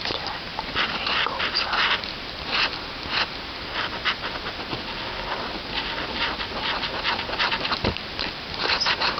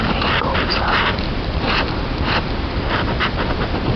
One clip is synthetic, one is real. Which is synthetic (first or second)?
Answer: second